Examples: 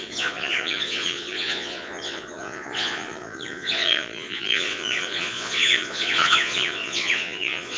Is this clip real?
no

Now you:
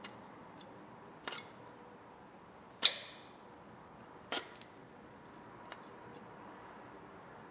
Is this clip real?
yes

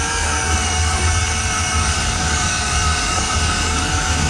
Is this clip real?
no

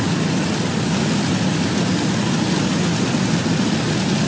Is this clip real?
yes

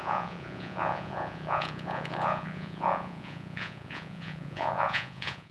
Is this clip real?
no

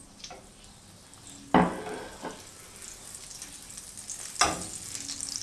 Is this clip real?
yes